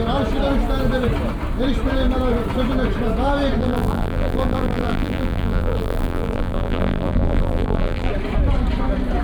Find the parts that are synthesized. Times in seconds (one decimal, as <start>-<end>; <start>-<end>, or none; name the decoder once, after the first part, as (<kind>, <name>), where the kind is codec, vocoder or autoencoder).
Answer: 3.6-8.1 (vocoder, BigVGAN v2)